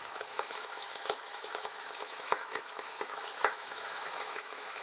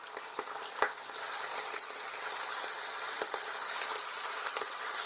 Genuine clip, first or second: second